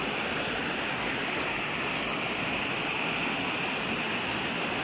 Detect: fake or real real